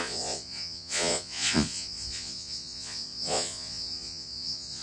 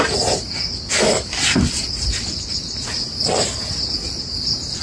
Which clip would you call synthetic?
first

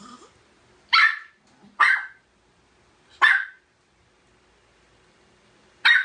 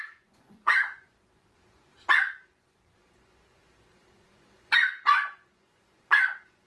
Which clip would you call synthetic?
second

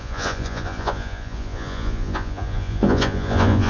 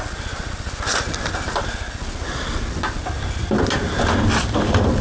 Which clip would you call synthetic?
first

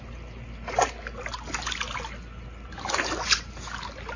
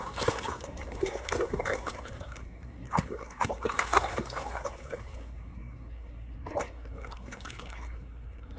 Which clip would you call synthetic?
second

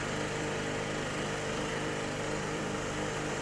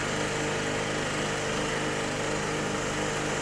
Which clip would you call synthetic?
first